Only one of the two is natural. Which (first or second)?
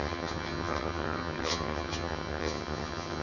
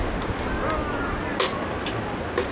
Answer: second